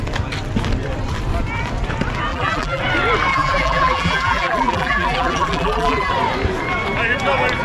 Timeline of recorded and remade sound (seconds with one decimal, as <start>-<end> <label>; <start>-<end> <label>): 0.0-2.3 recorded; 2.3-2.8 remade; 2.8-3.3 recorded; 3.3-6.1 remade; 6.1-7.6 recorded